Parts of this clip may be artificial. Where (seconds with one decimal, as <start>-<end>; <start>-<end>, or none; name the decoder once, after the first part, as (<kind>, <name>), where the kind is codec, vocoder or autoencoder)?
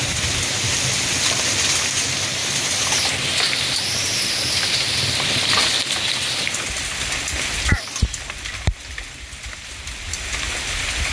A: 2.4-3.1 (vocoder, BigVGAN v2)